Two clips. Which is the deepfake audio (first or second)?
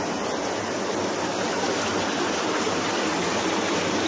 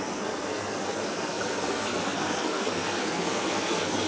second